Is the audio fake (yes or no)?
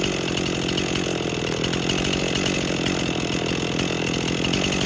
no